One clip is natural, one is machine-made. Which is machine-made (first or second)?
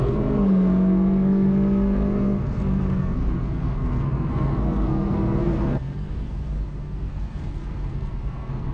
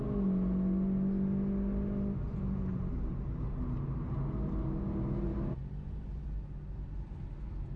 first